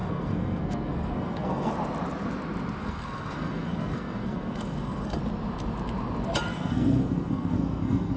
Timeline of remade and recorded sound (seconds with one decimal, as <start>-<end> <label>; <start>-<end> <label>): 0.0-1.7 remade; 1.7-2.8 recorded; 2.8-5.2 remade; 5.2-6.5 recorded; 6.5-8.2 remade